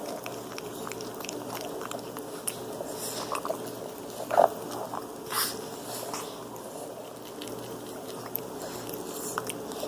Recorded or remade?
recorded